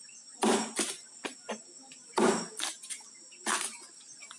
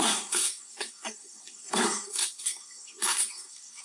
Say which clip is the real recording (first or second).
first